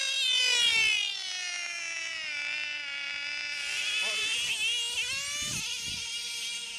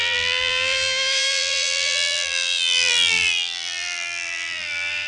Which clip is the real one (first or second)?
first